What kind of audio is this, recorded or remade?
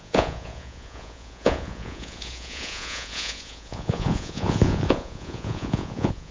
remade